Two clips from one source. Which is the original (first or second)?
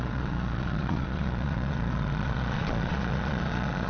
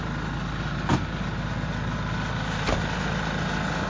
second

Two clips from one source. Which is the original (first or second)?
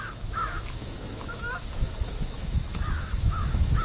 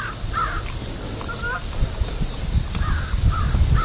second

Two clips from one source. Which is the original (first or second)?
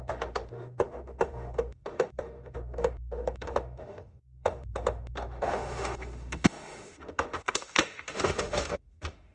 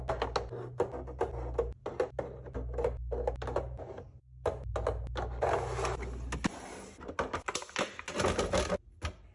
second